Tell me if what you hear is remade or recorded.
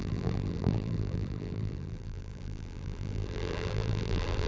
remade